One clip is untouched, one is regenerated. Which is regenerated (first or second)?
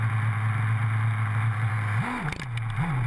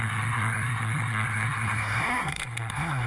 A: second